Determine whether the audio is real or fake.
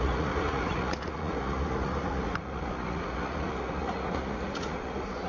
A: fake